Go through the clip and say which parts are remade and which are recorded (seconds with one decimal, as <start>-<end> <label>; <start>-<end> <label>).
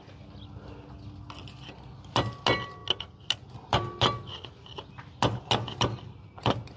0.0-6.8 recorded